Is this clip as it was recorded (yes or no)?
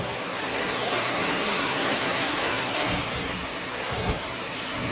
no